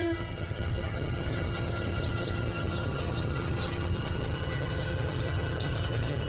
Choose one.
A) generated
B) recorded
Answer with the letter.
A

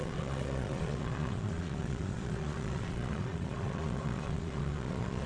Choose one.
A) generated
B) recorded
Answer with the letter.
A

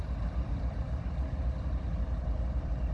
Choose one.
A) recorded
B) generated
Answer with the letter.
B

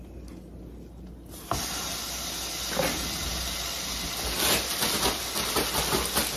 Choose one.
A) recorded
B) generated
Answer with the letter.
A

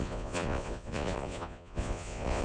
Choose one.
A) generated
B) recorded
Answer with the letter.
A